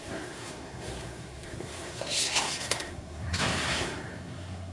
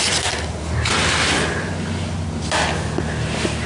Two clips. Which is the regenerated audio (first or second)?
first